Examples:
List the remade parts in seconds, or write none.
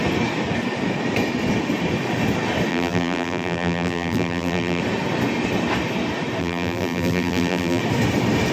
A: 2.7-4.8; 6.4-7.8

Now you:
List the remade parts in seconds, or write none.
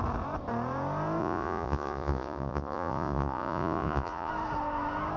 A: 1.2-4.3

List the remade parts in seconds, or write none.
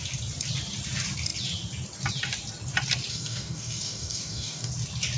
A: 3.1-4.7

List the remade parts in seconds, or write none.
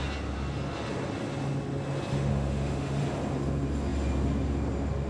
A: 2.3-3.0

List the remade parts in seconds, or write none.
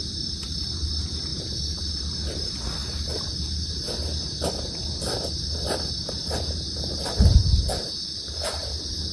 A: none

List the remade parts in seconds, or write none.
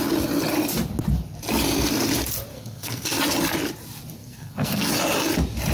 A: 2.5-3.2; 4.2-4.9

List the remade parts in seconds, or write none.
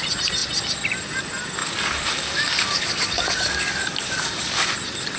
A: 1.6-4.7